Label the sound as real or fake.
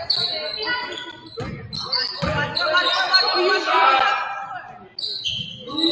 real